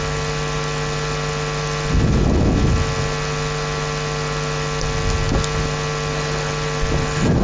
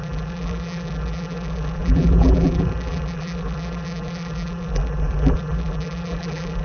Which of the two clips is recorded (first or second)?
first